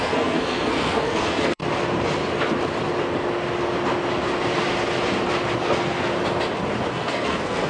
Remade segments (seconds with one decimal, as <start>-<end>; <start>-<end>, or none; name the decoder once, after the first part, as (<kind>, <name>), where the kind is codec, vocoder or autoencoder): 0.0-1.6 (codec, SNAC); 5.6-6.1; 6.9-7.7